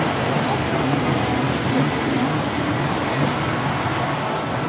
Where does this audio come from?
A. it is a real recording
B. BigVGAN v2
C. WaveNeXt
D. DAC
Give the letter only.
A